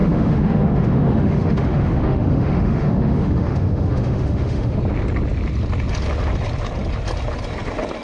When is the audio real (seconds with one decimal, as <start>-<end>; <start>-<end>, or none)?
4.8-8.0